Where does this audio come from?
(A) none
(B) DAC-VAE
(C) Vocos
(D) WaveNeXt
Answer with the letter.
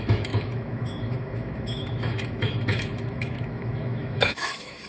B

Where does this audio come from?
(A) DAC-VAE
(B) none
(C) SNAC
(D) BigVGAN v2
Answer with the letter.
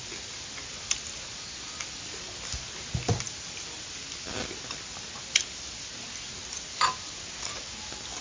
B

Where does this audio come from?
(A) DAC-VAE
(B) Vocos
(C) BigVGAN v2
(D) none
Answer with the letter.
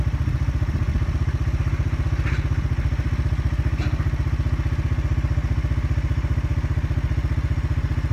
D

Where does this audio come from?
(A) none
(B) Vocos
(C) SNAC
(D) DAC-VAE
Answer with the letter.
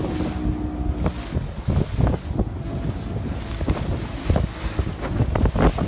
A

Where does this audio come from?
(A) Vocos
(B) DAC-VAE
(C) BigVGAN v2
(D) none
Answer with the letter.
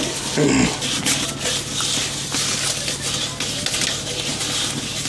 D